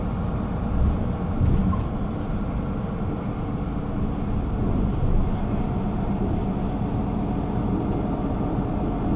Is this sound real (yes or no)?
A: yes